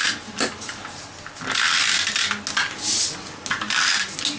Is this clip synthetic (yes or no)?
no